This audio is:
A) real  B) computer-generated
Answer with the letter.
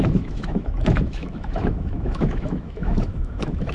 B